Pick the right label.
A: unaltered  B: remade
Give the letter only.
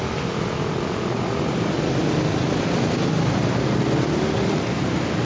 A